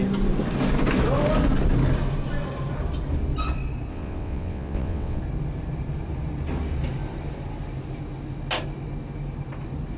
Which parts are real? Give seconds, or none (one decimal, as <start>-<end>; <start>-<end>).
0.0-3.9; 5.2-10.0